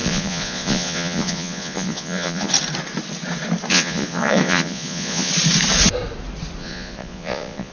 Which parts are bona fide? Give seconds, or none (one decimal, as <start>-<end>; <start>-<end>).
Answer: 2.5-3.7; 5.3-6.6